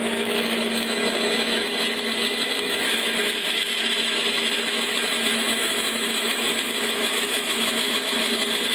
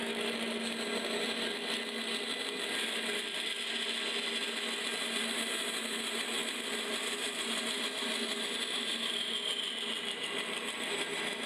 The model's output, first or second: first